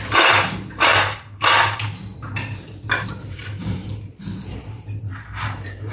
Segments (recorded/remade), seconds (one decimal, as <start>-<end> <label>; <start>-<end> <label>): 0.0-5.9 remade